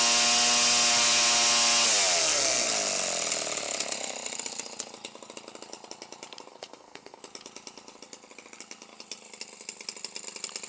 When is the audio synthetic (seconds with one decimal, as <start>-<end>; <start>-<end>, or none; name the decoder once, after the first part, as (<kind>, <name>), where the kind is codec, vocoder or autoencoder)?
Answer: 2.2-2.7 (codec, SNAC); 6.5-7.2